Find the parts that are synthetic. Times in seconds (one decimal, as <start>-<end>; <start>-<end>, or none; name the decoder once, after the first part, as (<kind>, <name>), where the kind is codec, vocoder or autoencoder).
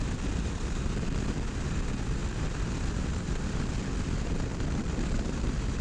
0.0-5.8 (vocoder, BigVGAN v2)